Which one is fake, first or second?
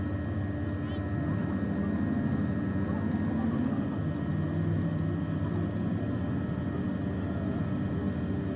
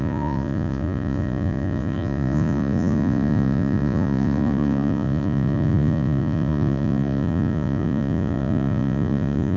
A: second